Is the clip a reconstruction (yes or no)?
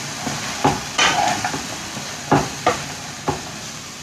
no